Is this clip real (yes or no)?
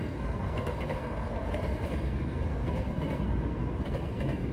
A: no